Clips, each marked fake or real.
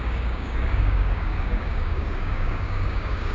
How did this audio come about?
fake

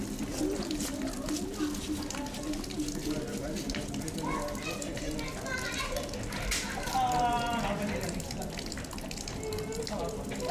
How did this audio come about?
real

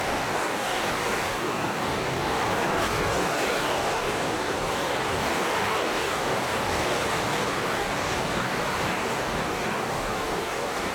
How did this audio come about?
fake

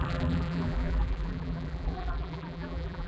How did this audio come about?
fake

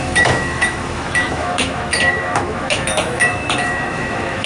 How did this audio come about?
fake